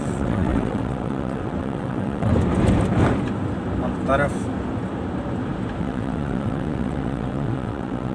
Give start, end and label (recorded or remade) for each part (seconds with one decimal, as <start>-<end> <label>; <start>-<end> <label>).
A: 0.0-2.3 remade; 2.3-5.8 recorded; 5.8-8.1 remade